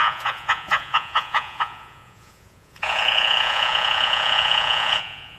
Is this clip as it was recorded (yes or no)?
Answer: no